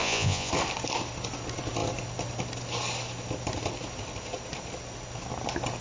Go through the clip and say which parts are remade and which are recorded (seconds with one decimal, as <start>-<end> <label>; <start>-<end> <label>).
0.0-0.5 remade; 0.5-5.8 recorded